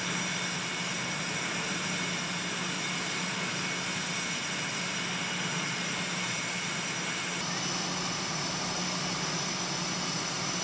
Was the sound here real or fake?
real